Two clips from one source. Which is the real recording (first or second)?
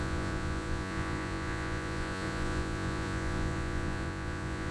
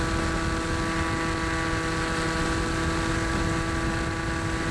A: second